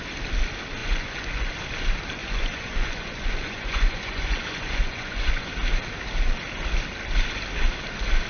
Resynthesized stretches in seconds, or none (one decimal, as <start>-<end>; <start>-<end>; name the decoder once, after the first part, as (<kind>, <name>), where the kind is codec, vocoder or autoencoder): 0.8-1.5 (vocoder, Vocos); 2.2-5.5